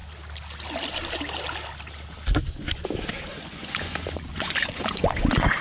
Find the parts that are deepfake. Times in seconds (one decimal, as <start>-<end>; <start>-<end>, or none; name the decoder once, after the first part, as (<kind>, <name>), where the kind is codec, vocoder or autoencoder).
3.3-5.6 (vocoder, Vocos)